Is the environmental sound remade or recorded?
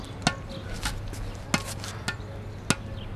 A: recorded